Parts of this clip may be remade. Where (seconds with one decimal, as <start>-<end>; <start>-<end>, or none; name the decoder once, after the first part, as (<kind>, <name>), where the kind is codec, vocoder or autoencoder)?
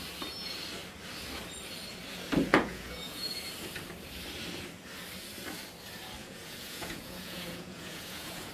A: 2.5-3.4 (vocoder, Vocos); 6.2-8.5